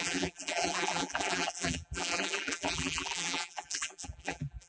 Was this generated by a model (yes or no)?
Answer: yes